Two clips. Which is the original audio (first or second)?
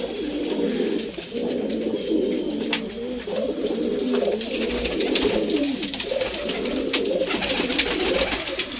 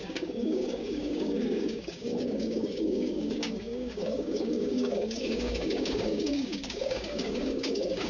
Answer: first